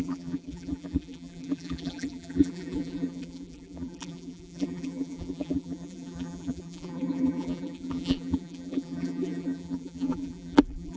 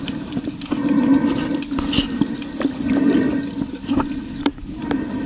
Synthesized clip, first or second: first